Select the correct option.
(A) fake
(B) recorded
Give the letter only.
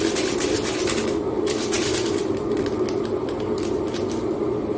B